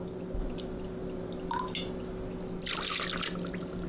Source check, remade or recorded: recorded